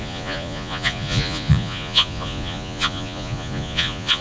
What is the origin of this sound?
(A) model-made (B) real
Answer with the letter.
A